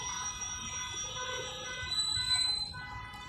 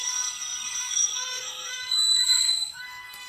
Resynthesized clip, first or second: second